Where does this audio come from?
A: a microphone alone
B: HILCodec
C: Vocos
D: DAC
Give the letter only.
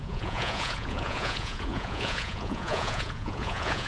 C